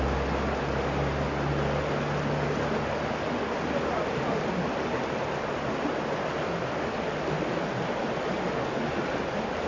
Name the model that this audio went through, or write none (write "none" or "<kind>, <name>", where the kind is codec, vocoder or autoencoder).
none